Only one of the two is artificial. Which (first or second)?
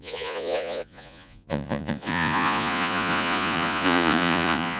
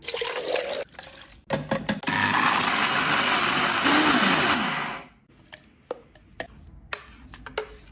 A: first